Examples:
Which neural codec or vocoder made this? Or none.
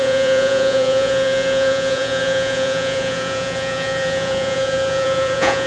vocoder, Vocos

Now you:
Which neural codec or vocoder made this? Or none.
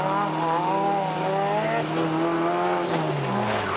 none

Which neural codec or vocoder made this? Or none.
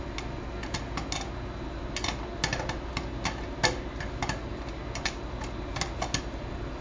none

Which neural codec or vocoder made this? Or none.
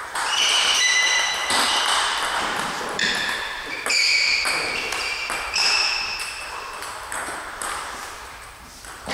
vocoder, BigVGAN v2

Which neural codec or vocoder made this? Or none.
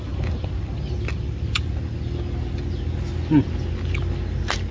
none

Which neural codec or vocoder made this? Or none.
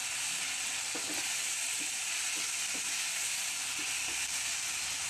none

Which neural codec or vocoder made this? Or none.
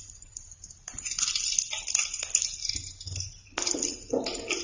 none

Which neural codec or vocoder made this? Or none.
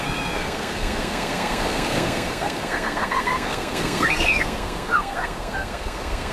codec, SNAC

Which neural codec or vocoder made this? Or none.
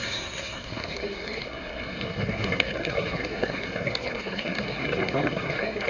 codec, SNAC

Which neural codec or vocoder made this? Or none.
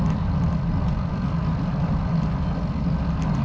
none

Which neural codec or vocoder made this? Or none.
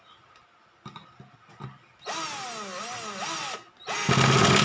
none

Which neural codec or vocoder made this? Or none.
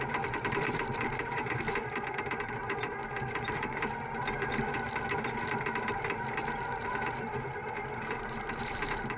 vocoder, BigVGAN v2